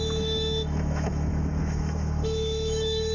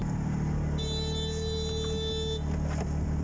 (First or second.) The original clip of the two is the second